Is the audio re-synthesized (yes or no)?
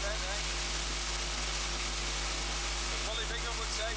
no